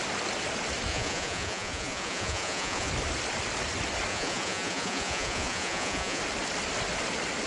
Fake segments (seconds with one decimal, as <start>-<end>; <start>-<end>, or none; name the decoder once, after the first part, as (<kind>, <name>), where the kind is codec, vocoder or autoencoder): 0.9-2.9 (vocoder, Vocos); 4.1-6.2